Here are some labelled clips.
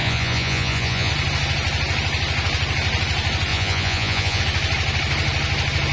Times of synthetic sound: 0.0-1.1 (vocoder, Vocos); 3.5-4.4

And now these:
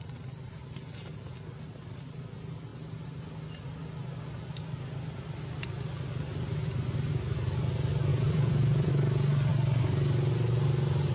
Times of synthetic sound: 8.1-8.9 (vocoder, Vocos)

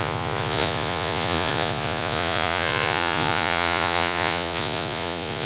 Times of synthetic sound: 0.0-5.5 (vocoder, Vocos)

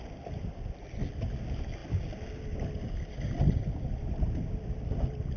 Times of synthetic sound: none

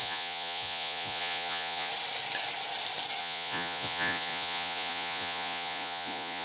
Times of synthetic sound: 0.0-1.9 (vocoder, Vocos); 3.2-6.4

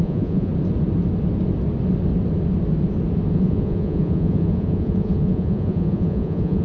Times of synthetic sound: 0.0-0.5 (vocoder, Vocos); 3.3-6.6